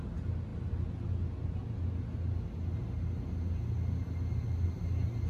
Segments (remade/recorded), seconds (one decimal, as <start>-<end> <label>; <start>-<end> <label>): 0.0-5.3 recorded